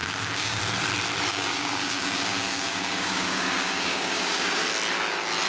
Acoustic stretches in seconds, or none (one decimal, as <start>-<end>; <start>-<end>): 0.6-1.3; 4.6-5.5